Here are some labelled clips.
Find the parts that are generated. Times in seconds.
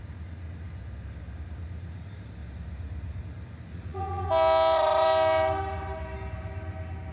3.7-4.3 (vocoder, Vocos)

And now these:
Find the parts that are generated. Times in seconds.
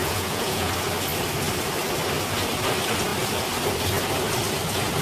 0.0-0.7 (vocoder, Vocos)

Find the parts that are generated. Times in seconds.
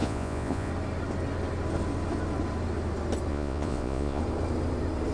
0.0-0.7 (vocoder, Vocos); 3.3-4.2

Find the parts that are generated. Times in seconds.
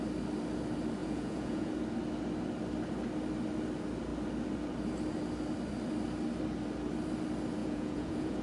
1.0-1.7 (vocoder, Vocos); 7.6-8.4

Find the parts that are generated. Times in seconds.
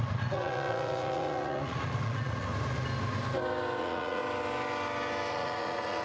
0.0-2.5 (vocoder, Vocos); 3.8-4.2; 5.3-6.0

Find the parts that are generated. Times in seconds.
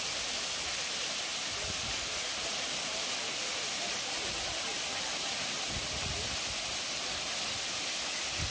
none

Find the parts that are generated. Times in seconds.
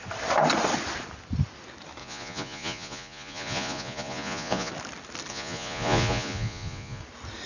2.0-4.7 (vocoder, Vocos); 5.3-7.0